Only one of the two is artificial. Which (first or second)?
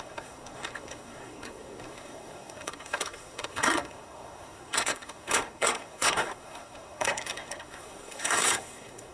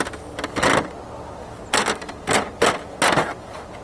first